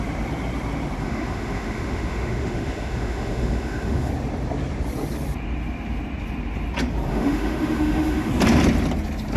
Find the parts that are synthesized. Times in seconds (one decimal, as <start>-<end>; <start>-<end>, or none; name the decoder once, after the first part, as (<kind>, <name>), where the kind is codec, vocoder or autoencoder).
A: 1.0-4.1 (autoencoder, DAC-VAE); 7.1-8.3